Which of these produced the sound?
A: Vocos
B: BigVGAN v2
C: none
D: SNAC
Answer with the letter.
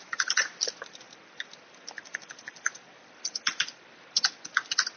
C